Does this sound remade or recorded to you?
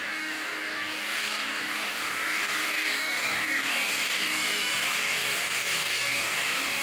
remade